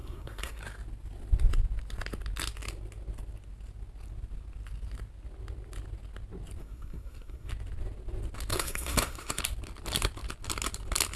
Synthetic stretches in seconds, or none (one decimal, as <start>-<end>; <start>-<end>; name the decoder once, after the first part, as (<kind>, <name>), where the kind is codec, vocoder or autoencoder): 0.0-0.6 (codec, SNAC); 6.6-7.5; 8.5-9.4